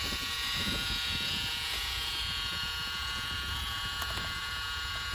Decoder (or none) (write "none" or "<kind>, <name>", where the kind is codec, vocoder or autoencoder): vocoder, Vocos